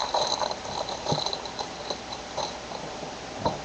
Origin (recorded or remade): recorded